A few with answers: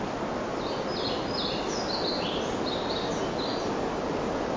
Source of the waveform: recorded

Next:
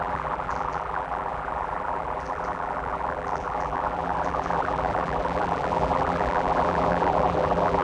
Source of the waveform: remade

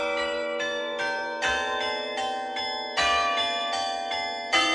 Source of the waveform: remade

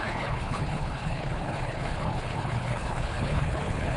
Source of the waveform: remade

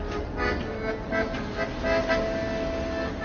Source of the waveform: recorded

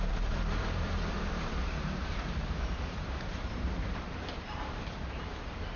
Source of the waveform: remade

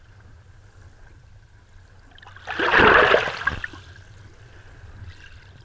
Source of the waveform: recorded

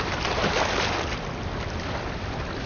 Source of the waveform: recorded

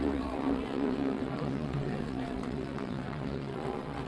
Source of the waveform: remade